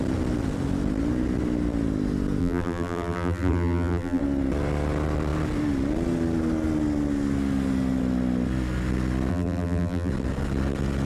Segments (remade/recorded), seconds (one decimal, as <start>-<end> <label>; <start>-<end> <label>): 0.0-2.4 recorded; 2.4-4.2 remade; 4.2-9.3 recorded; 9.3-10.1 remade; 10.1-11.0 recorded